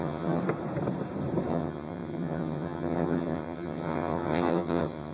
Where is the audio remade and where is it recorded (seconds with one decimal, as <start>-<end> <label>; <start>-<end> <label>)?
0.0-0.4 remade; 0.4-1.5 recorded; 1.5-5.1 remade